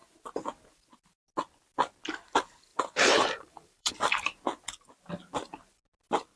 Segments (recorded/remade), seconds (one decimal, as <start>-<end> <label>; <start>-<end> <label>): 0.0-2.7 recorded; 2.7-3.9 remade; 3.9-6.4 recorded